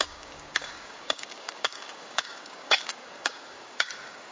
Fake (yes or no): yes